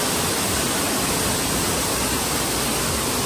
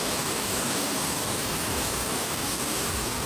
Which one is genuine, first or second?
first